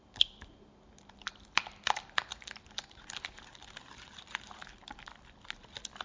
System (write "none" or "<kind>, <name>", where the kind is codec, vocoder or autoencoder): none